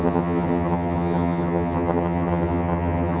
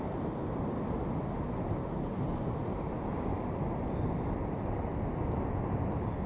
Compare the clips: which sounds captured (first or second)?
second